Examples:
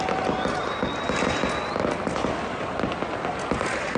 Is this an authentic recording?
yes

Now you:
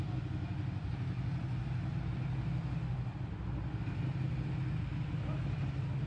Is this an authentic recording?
yes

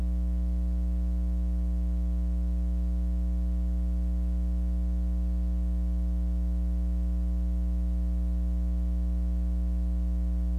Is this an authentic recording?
yes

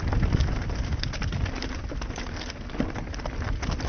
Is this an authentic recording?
yes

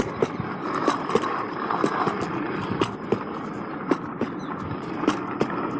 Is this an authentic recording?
yes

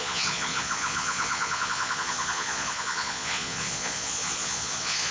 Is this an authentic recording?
no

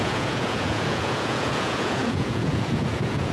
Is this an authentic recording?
no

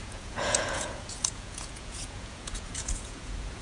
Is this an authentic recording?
no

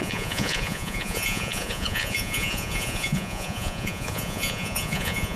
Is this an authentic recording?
no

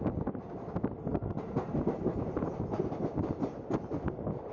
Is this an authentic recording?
yes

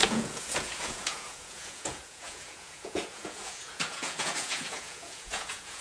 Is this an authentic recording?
no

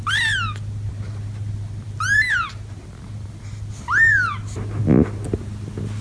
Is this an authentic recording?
yes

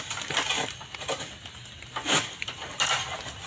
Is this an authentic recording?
yes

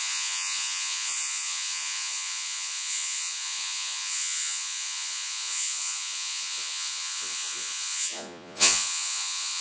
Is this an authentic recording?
no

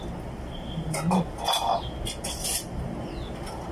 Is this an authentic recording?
yes